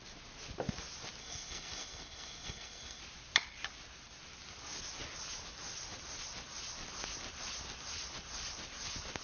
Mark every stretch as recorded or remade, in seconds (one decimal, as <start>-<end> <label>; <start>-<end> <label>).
0.0-1.2 recorded; 1.2-3.0 remade; 3.0-9.2 recorded